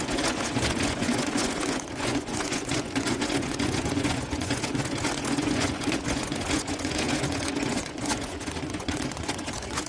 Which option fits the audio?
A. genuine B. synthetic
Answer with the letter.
B